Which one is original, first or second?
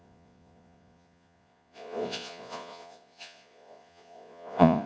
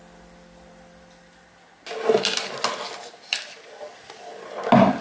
second